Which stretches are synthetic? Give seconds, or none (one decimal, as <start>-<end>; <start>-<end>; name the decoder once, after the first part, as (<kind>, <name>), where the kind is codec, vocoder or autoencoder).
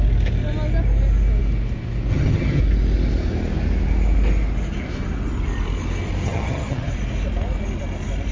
2.1-2.6 (vocoder, HiFi-GAN); 6.2-6.9